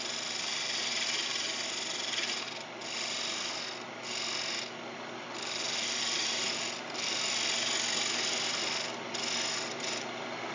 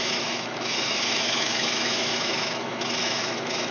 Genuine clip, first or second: first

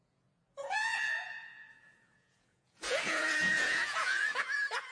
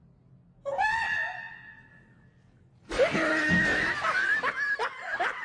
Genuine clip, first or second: second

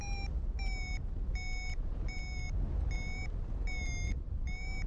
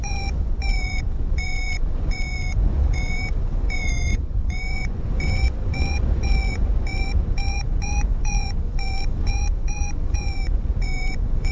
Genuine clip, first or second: first